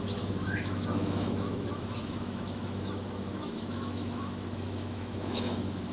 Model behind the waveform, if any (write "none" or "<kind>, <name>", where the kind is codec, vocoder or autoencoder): autoencoder, DAC-VAE